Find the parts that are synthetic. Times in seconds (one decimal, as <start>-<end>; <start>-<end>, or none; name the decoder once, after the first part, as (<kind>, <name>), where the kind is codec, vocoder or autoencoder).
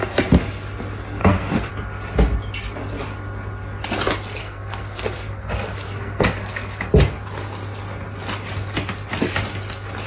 1.2-1.7 (codec, SNAC); 4.4-6.9